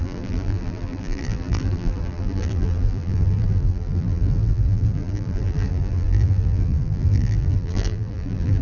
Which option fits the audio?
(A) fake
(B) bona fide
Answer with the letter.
A